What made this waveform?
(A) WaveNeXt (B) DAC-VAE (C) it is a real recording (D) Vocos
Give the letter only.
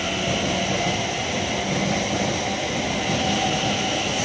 C